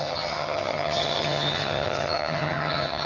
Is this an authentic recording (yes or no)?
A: no